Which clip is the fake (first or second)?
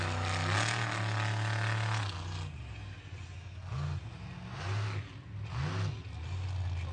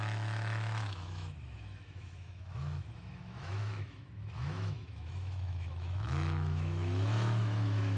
second